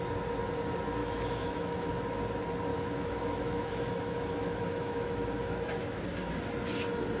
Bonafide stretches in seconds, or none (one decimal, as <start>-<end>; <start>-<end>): 0.0-1.0; 1.9-2.7; 6.0-7.2